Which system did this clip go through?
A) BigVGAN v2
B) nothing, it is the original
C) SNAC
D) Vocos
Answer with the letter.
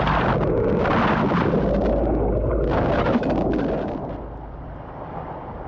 B